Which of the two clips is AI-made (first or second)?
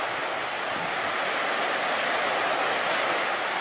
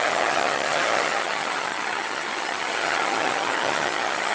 second